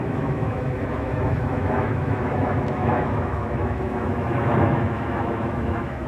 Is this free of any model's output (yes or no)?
no